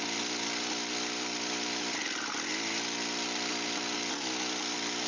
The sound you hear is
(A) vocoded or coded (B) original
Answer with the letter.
B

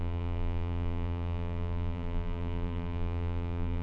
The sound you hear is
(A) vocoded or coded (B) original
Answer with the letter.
A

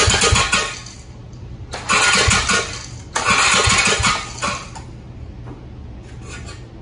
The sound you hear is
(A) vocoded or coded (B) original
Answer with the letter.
B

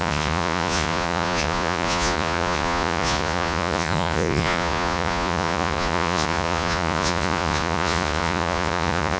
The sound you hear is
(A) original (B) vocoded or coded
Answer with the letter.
B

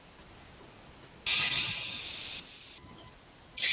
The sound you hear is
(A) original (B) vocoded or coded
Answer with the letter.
A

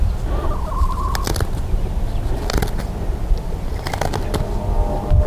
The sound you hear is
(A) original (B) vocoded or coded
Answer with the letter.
A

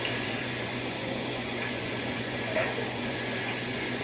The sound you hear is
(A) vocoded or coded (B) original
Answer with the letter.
A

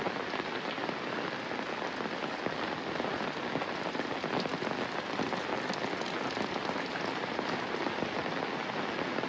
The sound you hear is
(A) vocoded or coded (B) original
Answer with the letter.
B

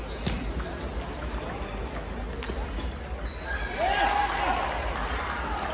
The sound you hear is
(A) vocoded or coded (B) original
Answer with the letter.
B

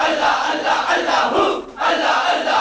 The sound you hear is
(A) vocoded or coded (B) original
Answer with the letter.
A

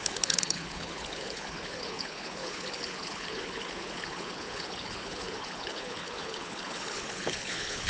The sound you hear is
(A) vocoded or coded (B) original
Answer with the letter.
A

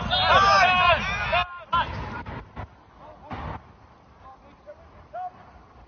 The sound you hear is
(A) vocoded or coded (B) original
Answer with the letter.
B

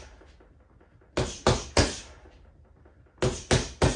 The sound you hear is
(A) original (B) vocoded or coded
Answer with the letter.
A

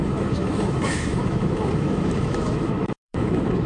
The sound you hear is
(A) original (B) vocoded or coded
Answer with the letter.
B